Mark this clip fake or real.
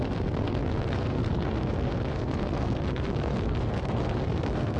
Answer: fake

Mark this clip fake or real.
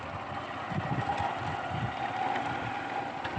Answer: real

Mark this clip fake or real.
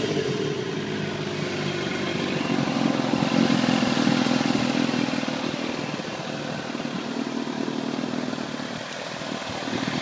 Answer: real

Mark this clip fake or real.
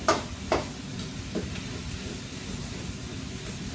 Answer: real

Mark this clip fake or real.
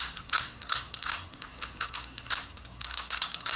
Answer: fake